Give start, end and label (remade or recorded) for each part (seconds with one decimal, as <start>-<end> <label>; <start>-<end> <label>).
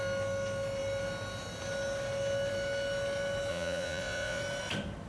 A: 0.0-3.5 recorded; 3.5-4.4 remade; 4.4-5.1 recorded